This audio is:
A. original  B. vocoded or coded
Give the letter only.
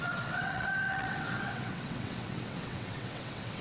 B